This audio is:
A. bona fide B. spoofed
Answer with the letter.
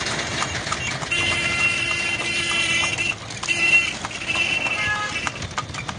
A